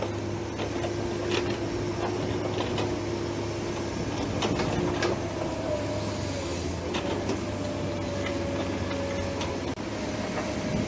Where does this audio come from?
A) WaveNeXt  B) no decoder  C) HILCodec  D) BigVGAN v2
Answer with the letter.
B